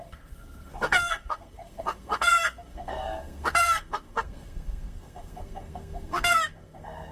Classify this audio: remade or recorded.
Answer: remade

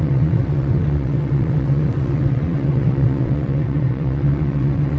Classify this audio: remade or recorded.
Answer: remade